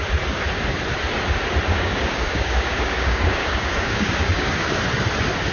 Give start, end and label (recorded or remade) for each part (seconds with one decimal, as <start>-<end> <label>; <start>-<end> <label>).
0.0-1.7 recorded; 1.7-4.8 remade; 4.8-5.5 recorded